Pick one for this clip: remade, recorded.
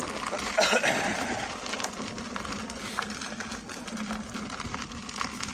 recorded